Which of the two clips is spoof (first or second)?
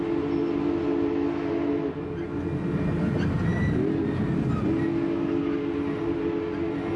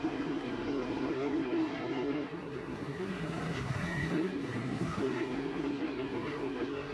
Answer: second